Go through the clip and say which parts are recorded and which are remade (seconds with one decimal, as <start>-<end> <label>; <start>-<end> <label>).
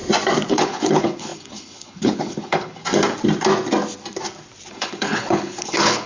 0.0-0.5 recorded; 0.5-2.8 remade; 2.8-4.7 recorded; 4.7-6.1 remade